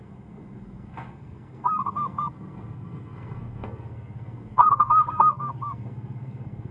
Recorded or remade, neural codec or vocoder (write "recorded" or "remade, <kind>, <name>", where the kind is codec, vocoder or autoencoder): remade, codec, SNAC